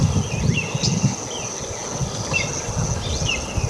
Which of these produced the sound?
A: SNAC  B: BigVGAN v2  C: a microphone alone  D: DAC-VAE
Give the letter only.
C